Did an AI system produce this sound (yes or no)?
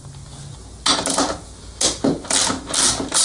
no